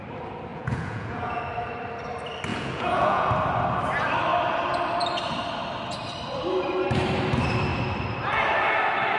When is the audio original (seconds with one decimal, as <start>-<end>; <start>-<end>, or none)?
0.0-0.5; 1.4-2.5; 3.3-9.2